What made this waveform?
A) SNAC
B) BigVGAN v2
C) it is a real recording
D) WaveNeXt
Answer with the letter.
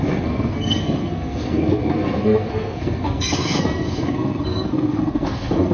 A